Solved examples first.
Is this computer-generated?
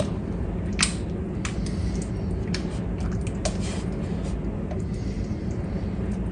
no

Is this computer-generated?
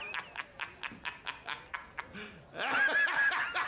no